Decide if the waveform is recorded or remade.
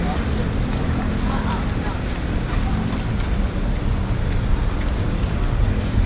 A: recorded